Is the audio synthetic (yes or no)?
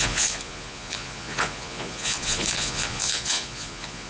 yes